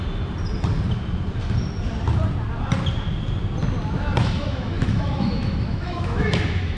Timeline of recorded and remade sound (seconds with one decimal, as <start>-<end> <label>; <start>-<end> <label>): 0.0-4.2 recorded; 4.2-6.8 remade